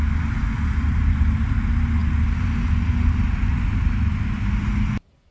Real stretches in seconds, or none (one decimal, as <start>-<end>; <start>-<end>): 0.0-5.3